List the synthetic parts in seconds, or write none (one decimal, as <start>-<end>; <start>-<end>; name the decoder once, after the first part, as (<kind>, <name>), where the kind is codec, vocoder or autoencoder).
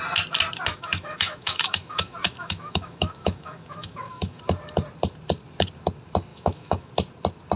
0.7-4.4 (autoencoder, DAC-VAE); 6.3-6.9